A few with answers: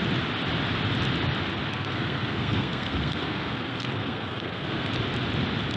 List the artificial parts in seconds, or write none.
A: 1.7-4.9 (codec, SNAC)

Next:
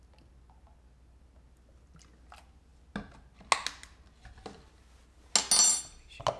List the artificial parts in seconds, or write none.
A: none

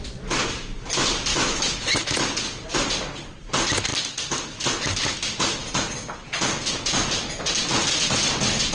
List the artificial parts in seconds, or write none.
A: 1.3-2.2 (autoencoder, DAC-VAE)

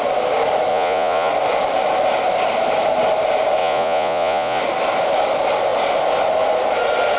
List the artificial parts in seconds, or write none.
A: 0.7-1.3 (vocoder, Vocos); 3.6-4.6

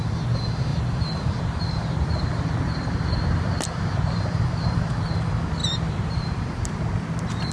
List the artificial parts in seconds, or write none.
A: 0.7-5.1 (vocoder, BigVGAN v2); 5.6-6.7